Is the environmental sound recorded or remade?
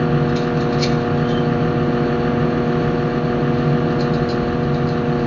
recorded